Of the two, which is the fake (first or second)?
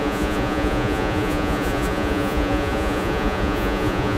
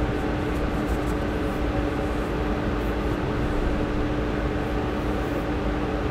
first